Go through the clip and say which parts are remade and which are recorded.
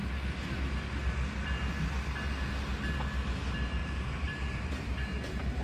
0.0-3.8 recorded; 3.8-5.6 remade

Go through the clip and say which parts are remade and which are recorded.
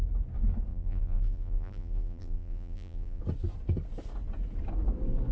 0.0-0.7 recorded; 0.7-3.2 remade; 3.2-5.3 recorded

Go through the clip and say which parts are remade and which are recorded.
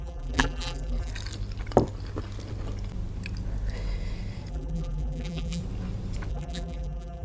0.0-1.1 remade; 1.1-4.5 recorded; 4.5-5.6 remade; 5.6-6.3 recorded; 6.3-7.2 remade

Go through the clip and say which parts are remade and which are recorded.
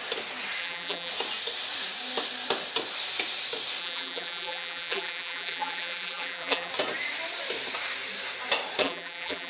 0.0-0.6 recorded; 0.6-1.1 remade; 1.1-3.8 recorded; 3.8-6.7 remade; 6.7-8.8 recorded; 8.8-9.5 remade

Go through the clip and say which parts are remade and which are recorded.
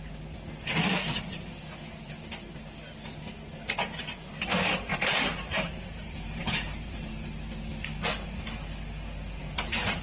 0.0-4.9 recorded; 4.9-7.1 remade; 7.1-10.0 recorded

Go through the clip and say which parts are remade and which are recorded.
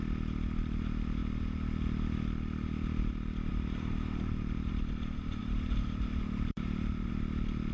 0.0-3.5 recorded; 3.5-4.7 remade; 4.7-5.4 recorded; 5.4-7.1 remade; 7.1-7.7 recorded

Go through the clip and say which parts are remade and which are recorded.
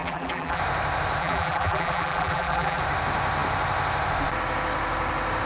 0.0-0.6 remade; 0.6-1.2 recorded; 1.2-2.8 remade; 2.8-5.5 recorded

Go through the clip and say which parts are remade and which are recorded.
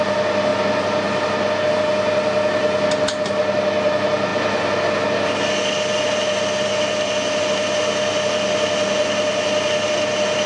0.0-10.5 recorded